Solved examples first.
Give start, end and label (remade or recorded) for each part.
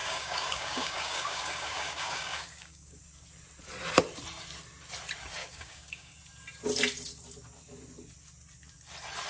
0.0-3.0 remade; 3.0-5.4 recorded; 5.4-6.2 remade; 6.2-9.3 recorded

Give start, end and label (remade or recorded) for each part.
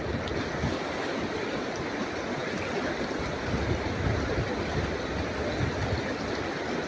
0.0-6.9 recorded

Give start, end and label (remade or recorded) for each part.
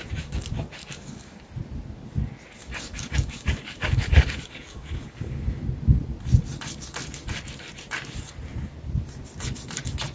0.0-0.8 recorded; 0.8-1.4 remade; 1.4-2.9 recorded; 2.9-5.4 remade; 5.4-10.1 recorded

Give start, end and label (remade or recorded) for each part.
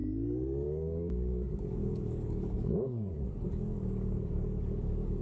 0.0-5.2 remade